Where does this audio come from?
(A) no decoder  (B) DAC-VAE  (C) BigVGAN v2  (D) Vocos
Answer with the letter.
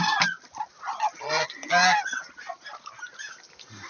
A